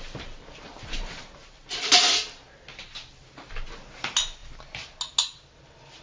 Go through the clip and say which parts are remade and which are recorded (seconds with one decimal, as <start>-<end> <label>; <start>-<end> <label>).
0.0-0.7 recorded; 0.7-1.9 remade; 1.9-6.0 recorded